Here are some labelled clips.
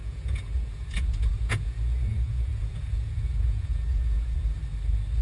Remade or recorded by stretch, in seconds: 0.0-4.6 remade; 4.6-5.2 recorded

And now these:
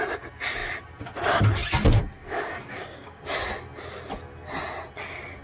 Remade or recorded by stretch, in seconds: 0.0-2.2 recorded; 2.2-3.2 remade; 3.2-5.4 recorded

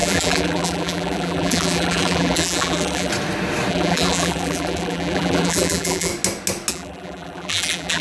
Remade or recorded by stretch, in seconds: 0.0-3.1 remade; 3.1-3.7 recorded; 3.7-6.1 remade; 6.1-6.7 recorded; 6.7-8.0 remade

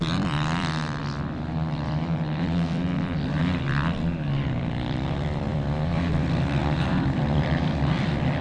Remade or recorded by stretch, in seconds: 0.0-5.5 remade; 5.5-6.1 recorded; 6.1-8.4 remade

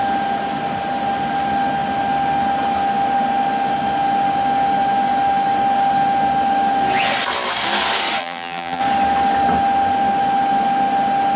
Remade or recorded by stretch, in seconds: 0.0-8.2 recorded; 8.2-8.8 remade; 8.8-11.4 recorded

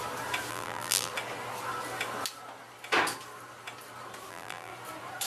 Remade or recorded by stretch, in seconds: 0.0-0.5 recorded; 0.5-1.1 remade; 1.1-4.3 recorded; 4.3-4.7 remade; 4.7-5.3 recorded